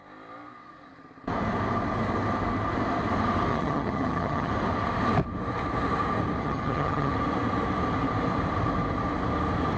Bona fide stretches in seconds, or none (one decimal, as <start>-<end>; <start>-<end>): 0.0-3.5; 4.5-6.4; 7.1-9.8